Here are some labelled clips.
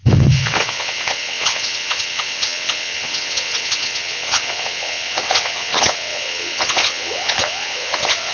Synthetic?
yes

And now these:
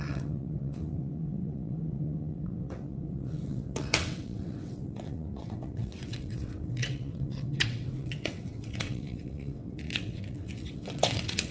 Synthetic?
yes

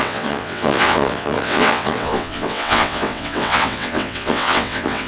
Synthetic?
yes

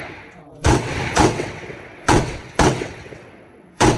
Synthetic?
yes